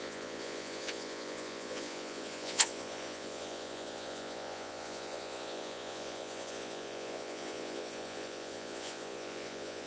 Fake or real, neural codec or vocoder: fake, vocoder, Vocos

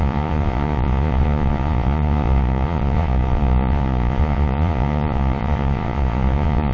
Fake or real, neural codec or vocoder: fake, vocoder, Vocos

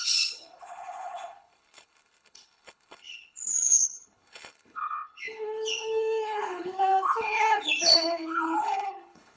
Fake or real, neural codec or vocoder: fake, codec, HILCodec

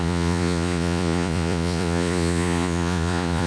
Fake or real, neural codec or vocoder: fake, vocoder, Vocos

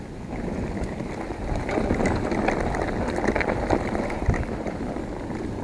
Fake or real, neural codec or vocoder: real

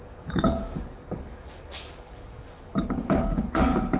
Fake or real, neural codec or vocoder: fake, codec, DAC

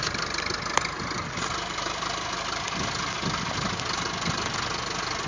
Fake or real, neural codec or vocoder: real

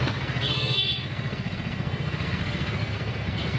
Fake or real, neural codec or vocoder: fake, codec, SNAC